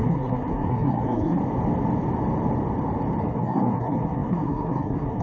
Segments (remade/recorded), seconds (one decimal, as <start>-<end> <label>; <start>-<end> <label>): 0.0-1.4 remade; 1.4-3.2 recorded; 3.2-5.2 remade